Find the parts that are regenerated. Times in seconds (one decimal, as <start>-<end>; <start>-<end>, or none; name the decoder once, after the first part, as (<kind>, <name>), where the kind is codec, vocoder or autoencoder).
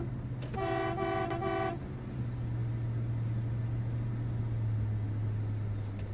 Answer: none